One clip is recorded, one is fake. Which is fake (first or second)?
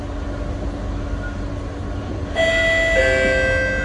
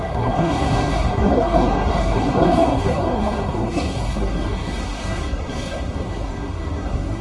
second